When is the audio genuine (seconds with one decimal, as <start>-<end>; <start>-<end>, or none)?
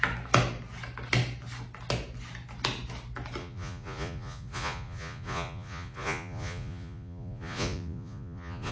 0.0-3.4